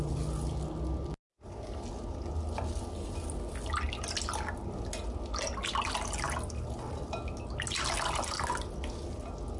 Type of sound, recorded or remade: recorded